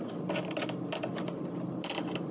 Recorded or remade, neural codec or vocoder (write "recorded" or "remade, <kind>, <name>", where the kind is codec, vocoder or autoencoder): recorded